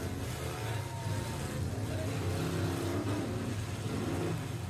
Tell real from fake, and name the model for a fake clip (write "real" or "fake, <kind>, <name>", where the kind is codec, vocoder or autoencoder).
real